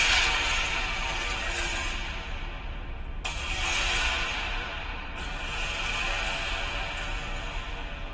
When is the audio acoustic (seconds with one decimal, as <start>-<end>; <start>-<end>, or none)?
0.0-4.3; 5.1-8.1